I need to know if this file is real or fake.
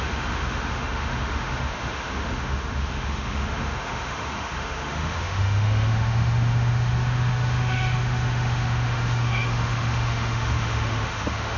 fake